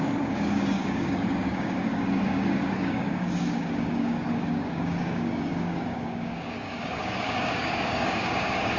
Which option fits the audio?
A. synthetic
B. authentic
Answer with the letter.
A